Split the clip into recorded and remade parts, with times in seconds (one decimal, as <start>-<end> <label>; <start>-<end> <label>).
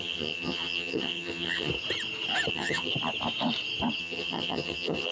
0.0-1.7 remade; 1.7-2.5 recorded; 2.5-2.9 remade; 2.9-4.0 recorded; 4.0-5.1 remade